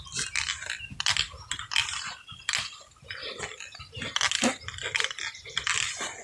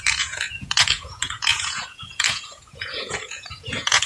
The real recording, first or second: first